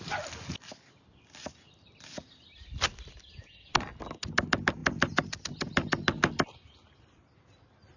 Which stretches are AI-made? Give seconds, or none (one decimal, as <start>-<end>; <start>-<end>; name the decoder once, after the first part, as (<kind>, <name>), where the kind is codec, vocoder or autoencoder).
none